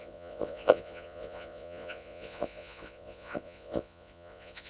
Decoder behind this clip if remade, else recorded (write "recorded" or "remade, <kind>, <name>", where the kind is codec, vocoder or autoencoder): remade, vocoder, Vocos